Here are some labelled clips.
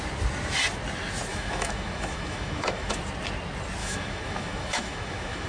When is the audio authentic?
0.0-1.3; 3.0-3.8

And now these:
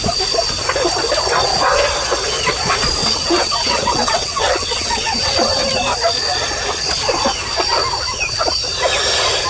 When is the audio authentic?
0.0-3.0; 5.7-9.5

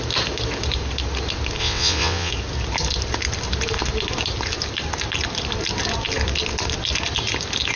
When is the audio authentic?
0.0-1.6; 2.3-7.8

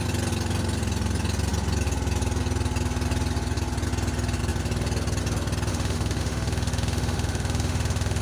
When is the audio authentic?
0.0-5.7

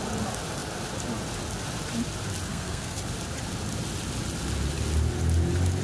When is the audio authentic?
0.0-2.5; 3.0-5.8